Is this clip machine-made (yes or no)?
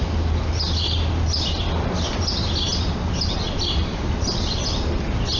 no